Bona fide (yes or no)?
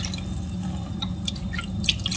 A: yes